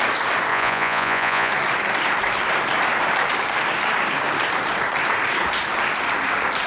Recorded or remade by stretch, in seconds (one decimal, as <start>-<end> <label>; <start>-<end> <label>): 0.0-0.5 recorded; 0.5-1.5 remade; 1.5-6.7 recorded